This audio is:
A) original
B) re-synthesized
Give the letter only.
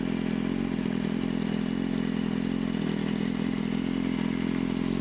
A